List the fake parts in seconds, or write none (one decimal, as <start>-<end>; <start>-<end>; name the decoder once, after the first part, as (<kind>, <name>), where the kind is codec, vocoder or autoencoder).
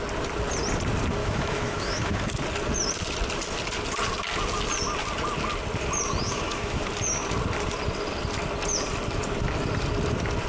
1.2-2.3 (autoencoder, DAC-VAE); 6.2-6.8